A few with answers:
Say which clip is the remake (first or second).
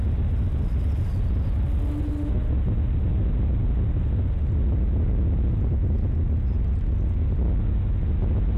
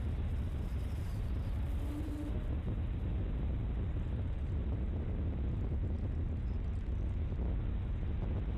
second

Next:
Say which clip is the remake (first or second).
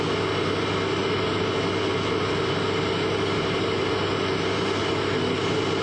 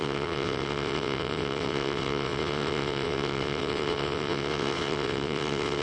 second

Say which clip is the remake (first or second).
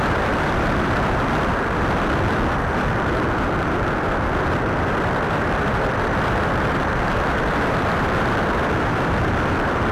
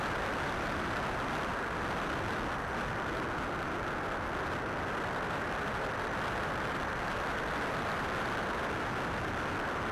first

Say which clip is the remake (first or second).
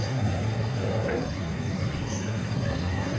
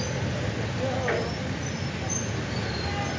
first